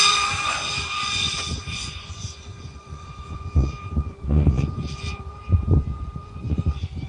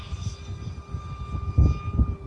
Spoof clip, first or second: first